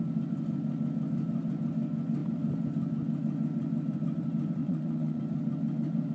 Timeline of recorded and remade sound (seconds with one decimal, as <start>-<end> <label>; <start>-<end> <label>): 0.0-4.6 recorded; 4.6-5.2 remade; 5.2-6.1 recorded